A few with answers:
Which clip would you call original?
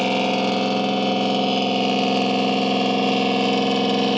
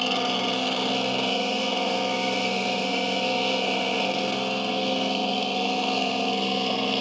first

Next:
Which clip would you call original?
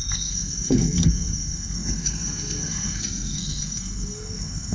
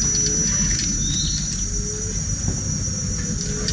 second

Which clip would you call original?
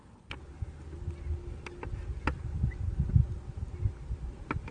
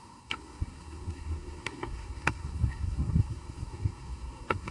first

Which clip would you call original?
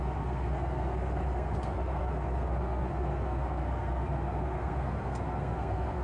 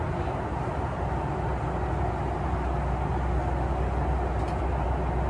second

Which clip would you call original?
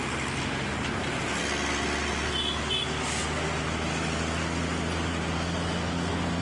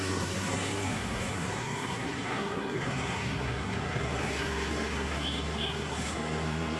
first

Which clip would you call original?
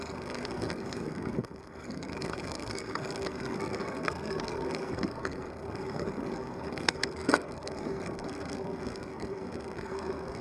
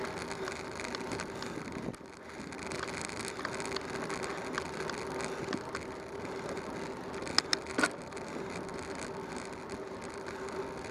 second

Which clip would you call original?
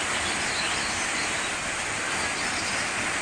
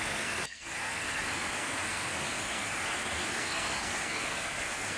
first